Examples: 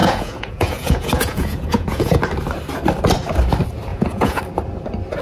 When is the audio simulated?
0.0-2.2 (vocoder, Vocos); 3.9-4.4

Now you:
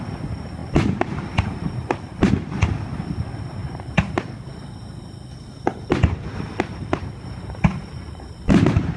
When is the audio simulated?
0.6-2.3 (vocoder, BigVGAN v2); 3.6-4.2; 6.8-8.6

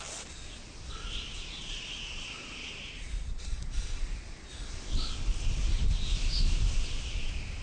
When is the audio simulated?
1.3-4.1 (vocoder, Vocos)

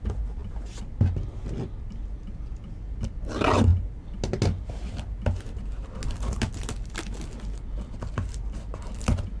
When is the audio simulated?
none

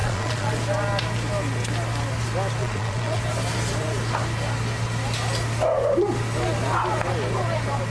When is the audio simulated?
0.0-0.5 (vocoder, Vocos); 2.6-3.2

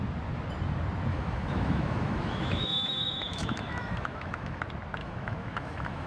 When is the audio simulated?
1.1-4.6 (autoencoder, DAC-VAE); 5.0-6.1